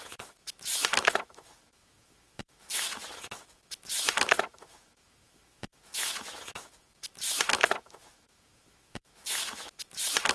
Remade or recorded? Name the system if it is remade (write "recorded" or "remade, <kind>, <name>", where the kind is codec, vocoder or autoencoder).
remade, autoencoder, DAC-VAE